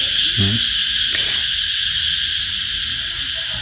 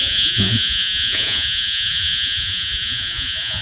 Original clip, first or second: first